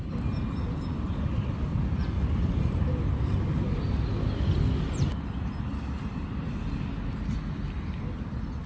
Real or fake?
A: real